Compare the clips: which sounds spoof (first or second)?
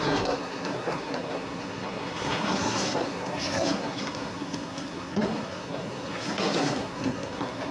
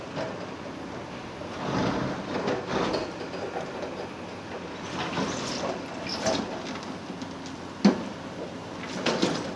first